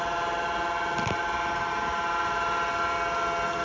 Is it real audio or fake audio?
real